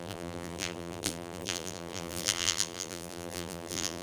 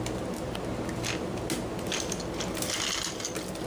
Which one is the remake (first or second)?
first